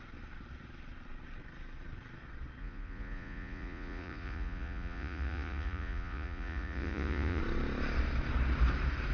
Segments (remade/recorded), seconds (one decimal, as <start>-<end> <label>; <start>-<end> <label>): 0.0-2.6 recorded; 2.6-7.4 remade; 7.4-9.1 recorded